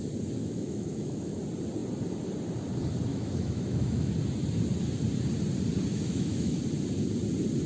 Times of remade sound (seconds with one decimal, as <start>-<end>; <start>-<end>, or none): 0.4-1.4; 3.1-4.1; 5.9-6.6